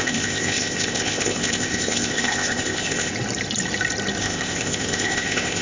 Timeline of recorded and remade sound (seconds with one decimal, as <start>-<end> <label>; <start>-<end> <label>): 0.0-3.1 remade; 3.1-4.2 recorded; 4.2-5.6 remade